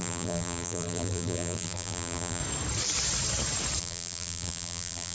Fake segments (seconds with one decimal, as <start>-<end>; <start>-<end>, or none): 0.0-2.4; 3.8-5.1